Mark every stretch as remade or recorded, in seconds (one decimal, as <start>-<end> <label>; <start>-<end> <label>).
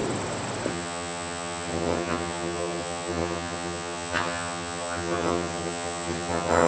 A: 0.0-0.7 recorded; 0.7-6.7 remade